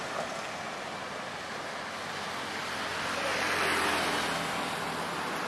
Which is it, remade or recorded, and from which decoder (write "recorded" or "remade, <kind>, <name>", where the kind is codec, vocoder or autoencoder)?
recorded